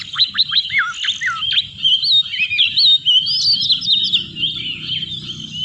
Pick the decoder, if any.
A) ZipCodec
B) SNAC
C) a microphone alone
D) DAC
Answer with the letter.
C